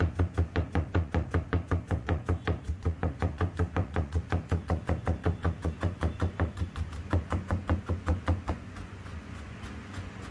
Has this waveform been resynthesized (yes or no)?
yes